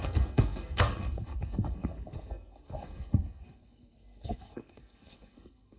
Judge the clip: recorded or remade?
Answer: remade